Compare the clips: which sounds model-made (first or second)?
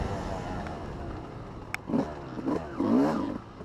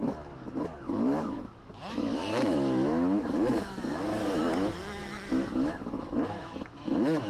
second